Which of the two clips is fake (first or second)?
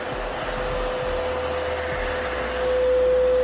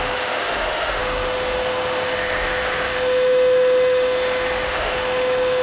second